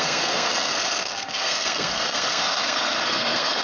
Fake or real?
fake